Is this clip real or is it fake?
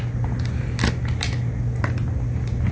real